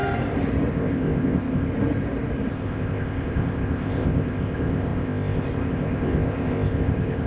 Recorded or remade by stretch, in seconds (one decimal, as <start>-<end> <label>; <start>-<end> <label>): 0.0-0.7 recorded; 0.7-1.7 remade; 1.7-2.5 recorded; 2.5-7.3 remade